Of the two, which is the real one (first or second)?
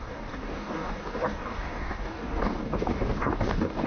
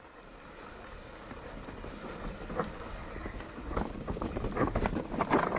second